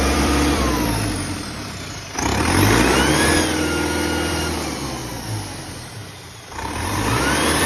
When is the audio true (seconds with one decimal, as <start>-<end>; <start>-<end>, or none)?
2.3-4.3